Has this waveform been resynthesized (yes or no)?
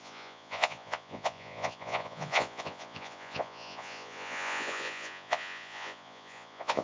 yes